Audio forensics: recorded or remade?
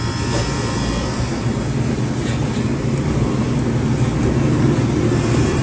recorded